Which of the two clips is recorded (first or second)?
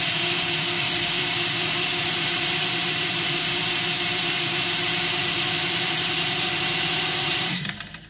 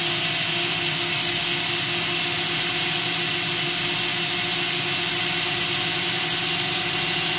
second